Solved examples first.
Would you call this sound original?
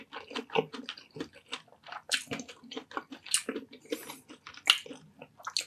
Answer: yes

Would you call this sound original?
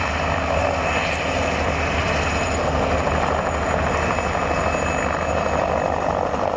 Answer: yes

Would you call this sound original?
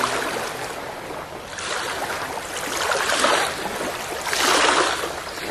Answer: yes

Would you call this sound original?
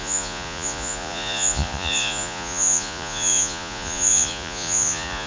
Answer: no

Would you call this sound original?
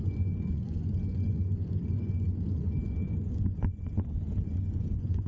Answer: no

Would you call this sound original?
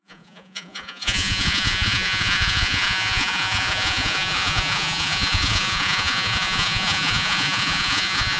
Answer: no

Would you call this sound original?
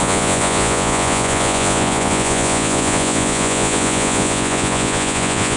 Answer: no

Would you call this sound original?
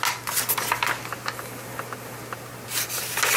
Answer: yes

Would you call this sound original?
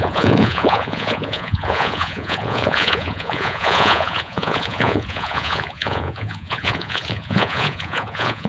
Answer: no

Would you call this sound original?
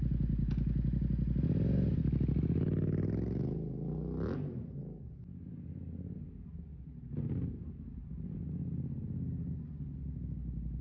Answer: yes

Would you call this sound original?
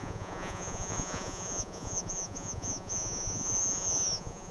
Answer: no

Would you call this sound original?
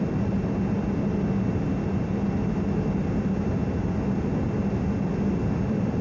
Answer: yes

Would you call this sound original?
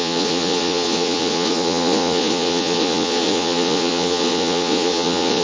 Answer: no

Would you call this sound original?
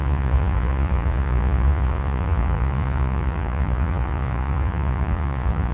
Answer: no